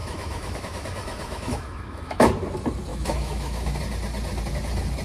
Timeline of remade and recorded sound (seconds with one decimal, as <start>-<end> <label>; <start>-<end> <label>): 0.0-2.3 remade; 2.3-2.9 recorded; 2.9-3.8 remade; 3.8-5.0 recorded